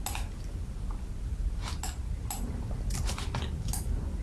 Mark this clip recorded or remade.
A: recorded